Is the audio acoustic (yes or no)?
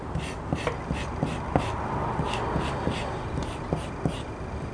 yes